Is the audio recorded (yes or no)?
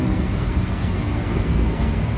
no